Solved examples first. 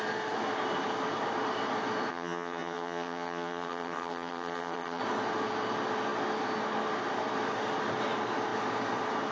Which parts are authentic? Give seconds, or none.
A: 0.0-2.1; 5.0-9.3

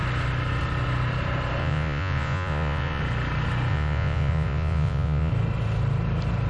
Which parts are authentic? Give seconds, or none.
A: 0.0-1.6; 3.0-3.7; 5.3-6.5

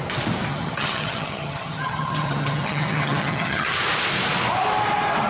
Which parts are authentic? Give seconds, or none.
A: 0.0-0.5; 3.7-5.3

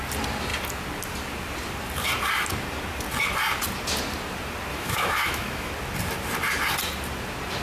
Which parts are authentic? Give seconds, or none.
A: 0.0-4.7; 5.7-7.6

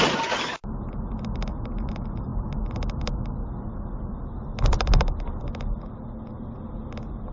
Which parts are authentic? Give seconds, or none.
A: 0.0-7.3

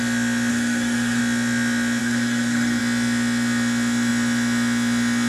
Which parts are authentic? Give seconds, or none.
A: 0.0-0.5; 1.2-2.0; 2.8-5.3